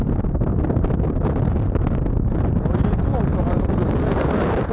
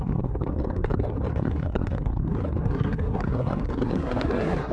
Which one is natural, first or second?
first